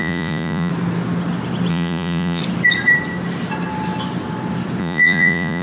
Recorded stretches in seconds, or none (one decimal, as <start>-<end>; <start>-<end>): 0.7-1.7; 2.4-4.8